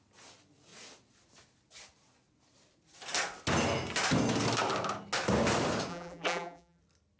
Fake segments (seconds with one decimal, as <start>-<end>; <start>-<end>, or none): 5.9-6.8